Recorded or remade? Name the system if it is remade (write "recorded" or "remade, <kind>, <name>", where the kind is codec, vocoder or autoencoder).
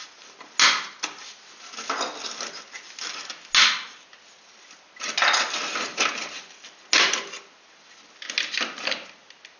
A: recorded